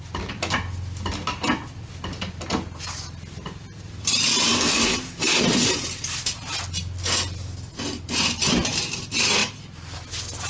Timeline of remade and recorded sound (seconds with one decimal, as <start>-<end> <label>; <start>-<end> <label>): 0.0-10.5 recorded

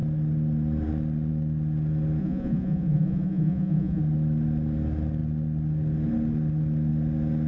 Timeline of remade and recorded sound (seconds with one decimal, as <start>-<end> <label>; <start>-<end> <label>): 0.0-2.2 recorded; 2.2-4.0 remade; 4.0-7.5 recorded

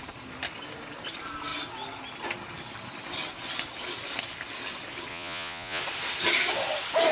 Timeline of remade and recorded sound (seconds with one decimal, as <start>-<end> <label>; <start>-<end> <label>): 0.0-5.1 recorded; 5.1-5.8 remade; 5.8-7.1 recorded

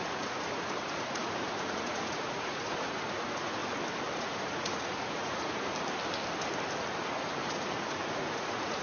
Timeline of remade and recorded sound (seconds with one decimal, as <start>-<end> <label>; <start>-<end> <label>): 0.0-3.6 remade; 3.6-4.2 recorded; 4.2-5.7 remade; 5.7-7.2 recorded; 7.2-8.8 remade

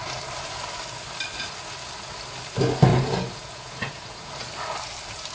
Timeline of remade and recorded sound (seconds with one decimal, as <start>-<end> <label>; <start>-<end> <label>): 0.0-2.9 recorded; 2.9-4.3 remade; 4.3-5.3 recorded

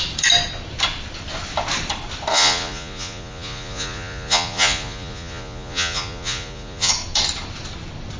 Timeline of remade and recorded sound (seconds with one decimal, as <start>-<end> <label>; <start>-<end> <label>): 0.0-2.3 recorded; 2.3-6.9 remade; 6.9-8.2 recorded